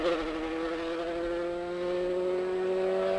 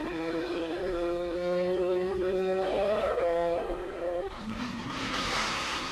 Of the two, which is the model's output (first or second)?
second